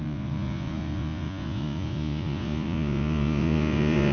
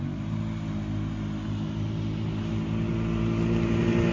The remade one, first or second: first